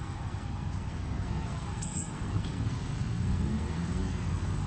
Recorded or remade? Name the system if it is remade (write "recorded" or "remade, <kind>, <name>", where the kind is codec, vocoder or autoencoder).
remade, codec, SNAC